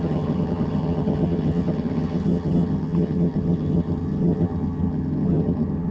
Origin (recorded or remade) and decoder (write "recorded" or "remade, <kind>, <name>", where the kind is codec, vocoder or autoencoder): remade, vocoder, HiFi-GAN